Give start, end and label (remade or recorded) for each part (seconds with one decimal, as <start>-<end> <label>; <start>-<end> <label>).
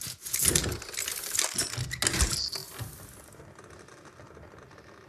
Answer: 0.0-5.1 recorded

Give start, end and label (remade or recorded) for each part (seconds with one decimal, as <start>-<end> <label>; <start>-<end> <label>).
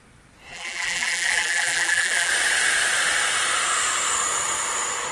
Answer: 0.0-0.5 recorded; 0.5-2.3 remade; 2.3-5.1 recorded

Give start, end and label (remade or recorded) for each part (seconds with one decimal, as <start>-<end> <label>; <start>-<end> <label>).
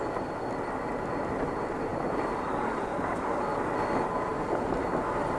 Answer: 0.0-1.9 recorded; 1.9-3.3 remade; 3.3-4.3 recorded; 4.3-4.9 remade; 4.9-5.4 recorded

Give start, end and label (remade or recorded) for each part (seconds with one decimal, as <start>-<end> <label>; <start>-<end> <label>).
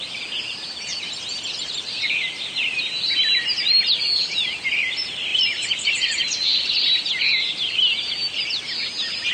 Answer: 0.0-0.9 recorded; 0.9-4.4 remade; 4.4-5.3 recorded; 5.3-7.1 remade; 7.1-9.3 recorded